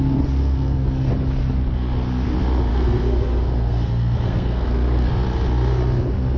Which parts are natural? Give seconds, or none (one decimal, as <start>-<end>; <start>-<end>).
0.0-0.4; 1.1-2.7; 5.1-6.4